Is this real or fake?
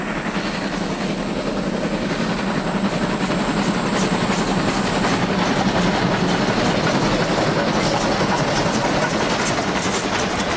real